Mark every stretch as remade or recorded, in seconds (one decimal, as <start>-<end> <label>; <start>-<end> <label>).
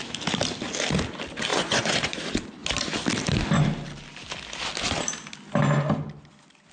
0.0-1.5 recorded; 1.5-2.2 remade; 2.2-6.7 recorded